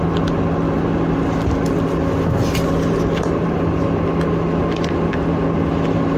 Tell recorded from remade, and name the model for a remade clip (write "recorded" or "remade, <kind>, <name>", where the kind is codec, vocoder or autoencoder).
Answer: recorded